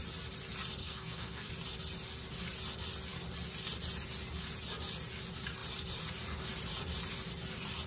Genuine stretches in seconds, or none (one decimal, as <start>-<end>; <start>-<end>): 0.0-0.8; 1.5-7.9